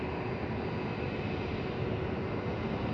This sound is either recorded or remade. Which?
recorded